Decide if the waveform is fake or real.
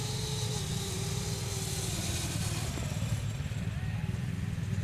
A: real